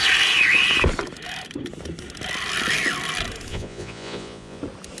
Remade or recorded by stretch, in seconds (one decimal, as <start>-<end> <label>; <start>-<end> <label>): 0.0-3.5 recorded; 3.5-4.6 remade; 4.6-5.0 recorded